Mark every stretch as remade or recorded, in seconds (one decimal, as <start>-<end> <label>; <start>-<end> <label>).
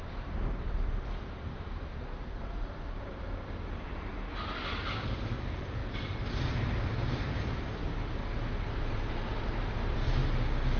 0.0-4.1 remade; 4.1-5.0 recorded; 5.0-5.8 remade; 5.8-6.9 recorded; 6.9-8.2 remade; 8.2-8.7 recorded; 8.7-10.2 remade; 10.2-10.8 recorded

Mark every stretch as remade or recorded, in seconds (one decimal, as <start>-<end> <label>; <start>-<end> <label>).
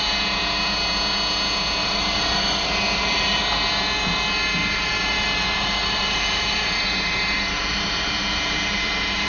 0.0-1.8 recorded; 1.8-3.4 remade; 3.4-4.6 recorded; 4.6-9.3 remade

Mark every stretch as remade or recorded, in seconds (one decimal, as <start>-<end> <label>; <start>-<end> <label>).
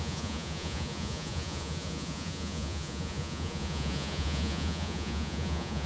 0.0-5.9 remade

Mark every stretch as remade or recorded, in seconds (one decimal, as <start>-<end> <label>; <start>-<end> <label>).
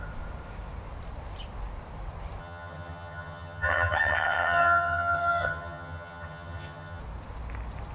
0.0-2.4 recorded; 2.4-7.0 remade; 7.0-7.9 recorded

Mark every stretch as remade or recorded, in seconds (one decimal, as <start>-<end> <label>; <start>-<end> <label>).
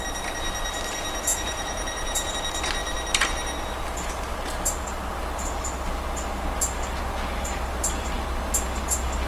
0.0-1.3 recorded; 1.3-2.3 remade; 2.3-9.3 recorded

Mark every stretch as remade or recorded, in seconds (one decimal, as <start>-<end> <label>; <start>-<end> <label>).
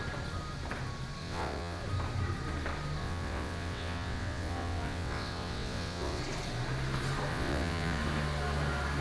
0.0-1.2 recorded; 1.2-1.8 remade; 1.8-3.0 recorded; 3.0-6.2 remade; 6.2-7.3 recorded; 7.3-8.0 remade; 8.0-9.0 recorded